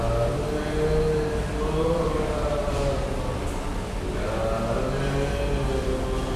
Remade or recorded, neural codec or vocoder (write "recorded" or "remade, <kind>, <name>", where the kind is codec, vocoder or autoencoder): recorded